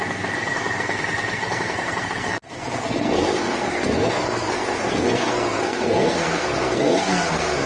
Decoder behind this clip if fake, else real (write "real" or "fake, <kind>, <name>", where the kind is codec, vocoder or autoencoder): fake, codec, SNAC